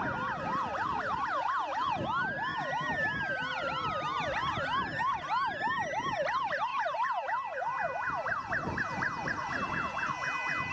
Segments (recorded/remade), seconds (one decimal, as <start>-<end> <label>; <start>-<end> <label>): 0.0-10.7 recorded